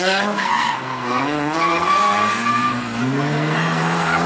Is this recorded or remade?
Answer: remade